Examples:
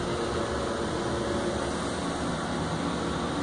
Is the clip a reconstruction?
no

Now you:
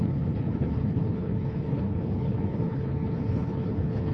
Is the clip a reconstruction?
yes